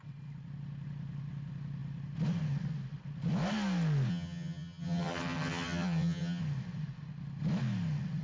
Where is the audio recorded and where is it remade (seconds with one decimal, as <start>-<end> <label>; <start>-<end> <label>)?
0.0-4.1 recorded; 4.1-6.4 remade; 6.4-8.2 recorded